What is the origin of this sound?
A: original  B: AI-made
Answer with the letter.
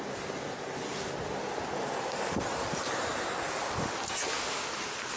A